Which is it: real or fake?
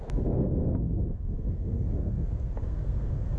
fake